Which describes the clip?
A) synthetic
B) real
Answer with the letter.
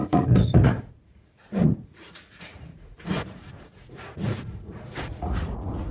A